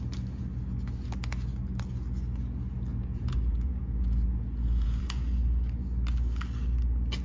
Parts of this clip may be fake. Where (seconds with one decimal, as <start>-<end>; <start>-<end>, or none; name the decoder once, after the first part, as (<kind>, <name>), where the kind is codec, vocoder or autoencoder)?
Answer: 2.9-5.0 (vocoder, Vocos)